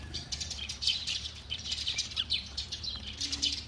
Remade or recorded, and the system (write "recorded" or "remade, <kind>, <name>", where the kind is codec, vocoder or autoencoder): remade, vocoder, BigVGAN v2